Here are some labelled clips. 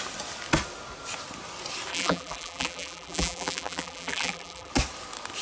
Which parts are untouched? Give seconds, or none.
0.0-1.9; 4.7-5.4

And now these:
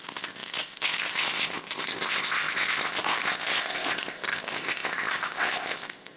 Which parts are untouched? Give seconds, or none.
none

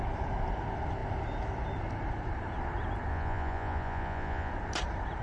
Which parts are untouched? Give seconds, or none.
0.0-3.1; 4.5-5.2

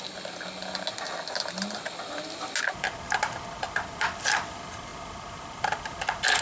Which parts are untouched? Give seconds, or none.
0.0-6.4

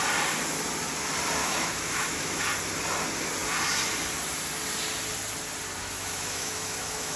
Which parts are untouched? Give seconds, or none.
0.0-1.4; 2.4-5.8

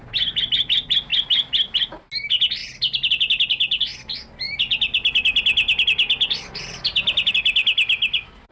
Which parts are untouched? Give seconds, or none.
0.0-8.5

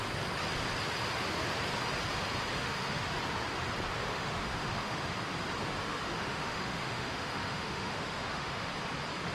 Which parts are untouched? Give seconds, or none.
0.0-2.5; 3.1-4.1; 5.0-5.8; 8.7-9.3

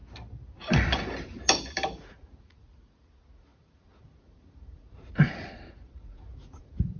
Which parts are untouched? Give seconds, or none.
0.0-2.0